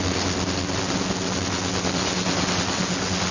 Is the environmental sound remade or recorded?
recorded